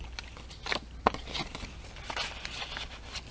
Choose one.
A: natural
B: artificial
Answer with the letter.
A